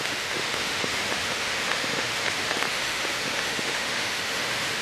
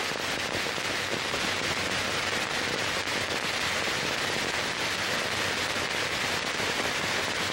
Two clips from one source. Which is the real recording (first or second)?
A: second